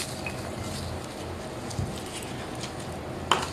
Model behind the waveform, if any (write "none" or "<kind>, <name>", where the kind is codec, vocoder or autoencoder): none